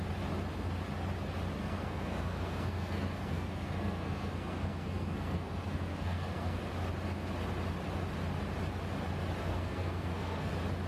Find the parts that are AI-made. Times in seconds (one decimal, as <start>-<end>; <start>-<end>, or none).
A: 1.6-6.6; 9.4-10.5

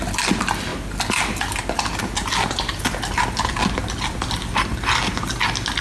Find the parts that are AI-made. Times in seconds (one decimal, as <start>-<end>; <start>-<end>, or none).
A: none

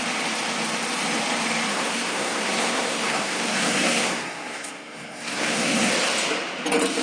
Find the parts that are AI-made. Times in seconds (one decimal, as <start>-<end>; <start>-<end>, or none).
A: 1.7-5.9

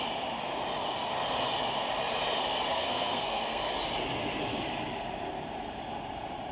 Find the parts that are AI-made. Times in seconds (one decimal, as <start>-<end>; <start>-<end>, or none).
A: 2.7-3.7

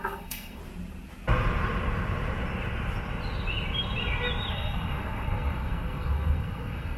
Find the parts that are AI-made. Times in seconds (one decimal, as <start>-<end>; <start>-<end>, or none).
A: 0.0-0.6; 4.5-7.0

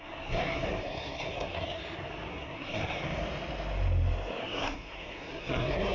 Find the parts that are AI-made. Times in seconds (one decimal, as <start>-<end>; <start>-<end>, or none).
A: 0.0-1.8; 2.3-3.0; 4.4-5.9

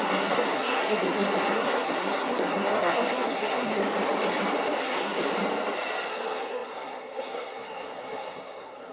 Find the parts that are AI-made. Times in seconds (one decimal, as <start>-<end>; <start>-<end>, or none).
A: 0.0-3.8; 4.8-5.3; 6.1-8.9